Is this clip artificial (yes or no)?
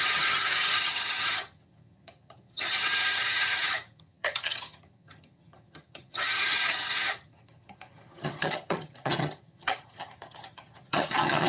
yes